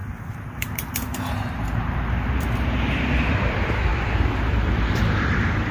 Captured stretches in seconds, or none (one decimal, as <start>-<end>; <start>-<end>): 3.1-3.9